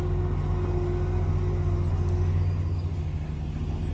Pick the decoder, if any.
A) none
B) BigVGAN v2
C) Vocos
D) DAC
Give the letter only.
A